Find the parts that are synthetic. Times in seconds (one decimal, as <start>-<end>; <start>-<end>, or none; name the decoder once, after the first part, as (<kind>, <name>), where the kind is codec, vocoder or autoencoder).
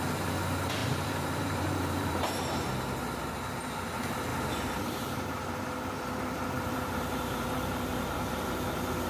0.8-2.7 (vocoder, BigVGAN v2); 4.3-8.5